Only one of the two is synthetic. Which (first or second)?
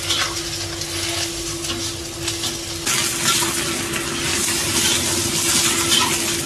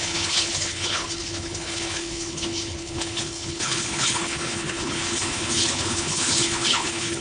second